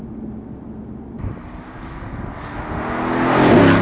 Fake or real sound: real